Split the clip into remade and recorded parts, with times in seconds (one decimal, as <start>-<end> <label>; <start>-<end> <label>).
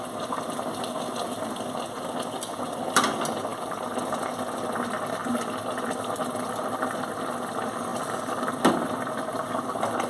0.0-3.5 recorded; 3.5-4.0 remade; 4.0-5.2 recorded; 5.2-6.2 remade; 6.2-7.9 recorded; 7.9-8.7 remade; 8.7-10.1 recorded